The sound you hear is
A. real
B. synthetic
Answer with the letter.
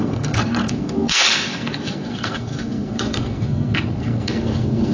B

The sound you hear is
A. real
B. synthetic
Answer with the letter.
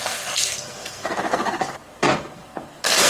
B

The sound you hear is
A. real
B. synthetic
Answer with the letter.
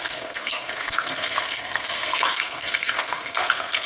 B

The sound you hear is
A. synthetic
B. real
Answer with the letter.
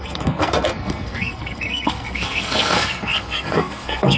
A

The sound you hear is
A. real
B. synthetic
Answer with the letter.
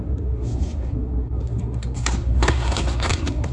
B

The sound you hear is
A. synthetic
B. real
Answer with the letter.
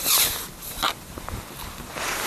B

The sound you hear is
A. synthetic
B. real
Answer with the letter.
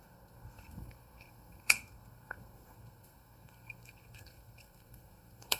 A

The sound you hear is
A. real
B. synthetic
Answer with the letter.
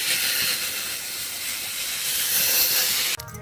A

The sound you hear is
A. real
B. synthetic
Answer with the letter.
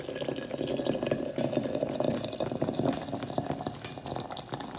A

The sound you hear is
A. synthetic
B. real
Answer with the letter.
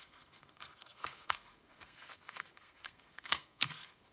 A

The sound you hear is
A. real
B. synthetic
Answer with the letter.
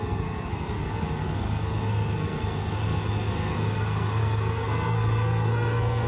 B